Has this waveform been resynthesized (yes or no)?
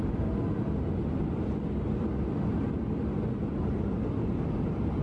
no